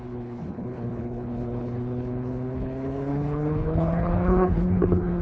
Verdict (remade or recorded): remade